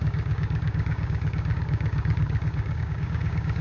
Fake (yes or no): yes